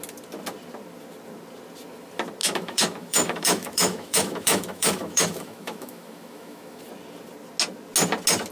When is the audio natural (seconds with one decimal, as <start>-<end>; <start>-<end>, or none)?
0.0-2.4; 6.8-8.5